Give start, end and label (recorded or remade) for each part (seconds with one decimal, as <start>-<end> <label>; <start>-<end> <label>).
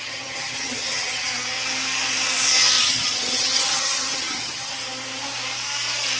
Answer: 0.0-1.3 remade; 1.3-2.8 recorded; 2.8-4.8 remade; 4.8-6.2 recorded